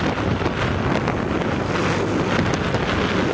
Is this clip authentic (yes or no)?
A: yes